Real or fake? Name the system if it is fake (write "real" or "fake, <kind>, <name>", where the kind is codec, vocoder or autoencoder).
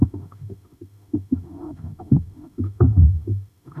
fake, autoencoder, DAC-VAE